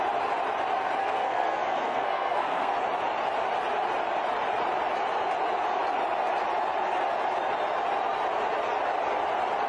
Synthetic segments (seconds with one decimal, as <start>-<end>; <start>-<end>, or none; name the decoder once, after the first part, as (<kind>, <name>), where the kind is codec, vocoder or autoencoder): 1.0-2.7 (codec, SNAC)